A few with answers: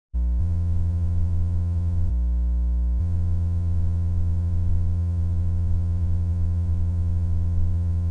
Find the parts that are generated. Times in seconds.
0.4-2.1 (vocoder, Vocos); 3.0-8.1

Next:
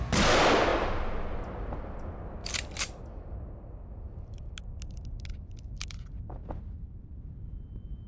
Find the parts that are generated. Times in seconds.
none

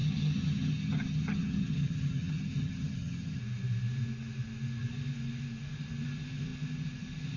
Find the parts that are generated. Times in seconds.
0.0-3.4 (vocoder, HiFi-GAN)

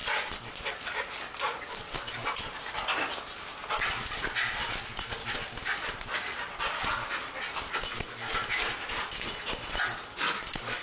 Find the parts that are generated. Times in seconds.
none